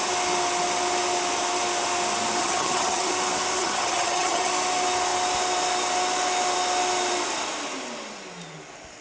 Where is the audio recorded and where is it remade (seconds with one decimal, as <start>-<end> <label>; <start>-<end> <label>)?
0.0-2.4 recorded; 2.4-3.1 remade; 3.1-3.6 recorded; 3.6-4.5 remade; 4.5-9.0 recorded